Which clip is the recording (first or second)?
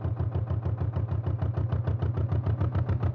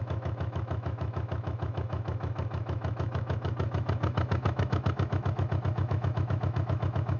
first